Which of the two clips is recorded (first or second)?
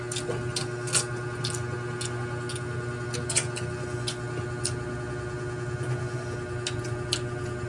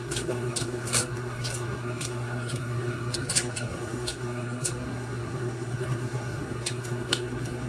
first